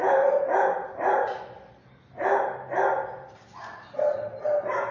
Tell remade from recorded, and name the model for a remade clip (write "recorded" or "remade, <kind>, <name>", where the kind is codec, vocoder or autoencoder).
recorded